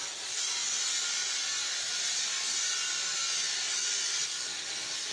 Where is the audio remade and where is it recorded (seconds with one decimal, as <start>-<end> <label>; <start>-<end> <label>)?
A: 0.0-5.1 recorded